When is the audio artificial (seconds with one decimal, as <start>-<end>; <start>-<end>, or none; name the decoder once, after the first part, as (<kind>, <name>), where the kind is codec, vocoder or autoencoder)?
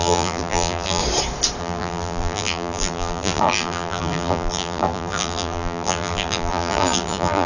0.0-1.0 (vocoder, BigVGAN v2); 1.6-7.5